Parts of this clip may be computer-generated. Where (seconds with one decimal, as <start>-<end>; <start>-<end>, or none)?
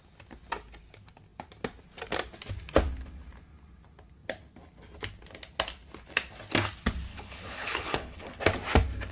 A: 7.1-8.4